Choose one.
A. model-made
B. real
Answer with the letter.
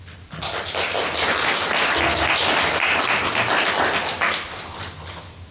B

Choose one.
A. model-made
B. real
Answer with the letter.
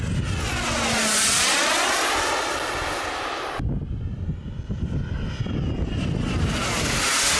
B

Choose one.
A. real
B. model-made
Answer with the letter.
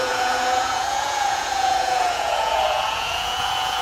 B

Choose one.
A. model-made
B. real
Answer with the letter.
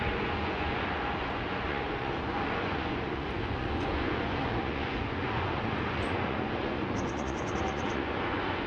A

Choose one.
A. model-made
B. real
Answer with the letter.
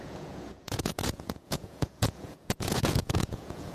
A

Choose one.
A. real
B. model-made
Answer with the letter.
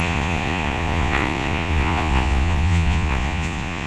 B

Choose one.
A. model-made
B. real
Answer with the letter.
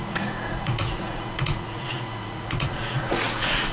A